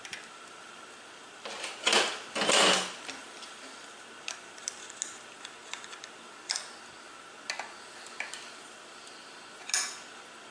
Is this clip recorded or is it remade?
recorded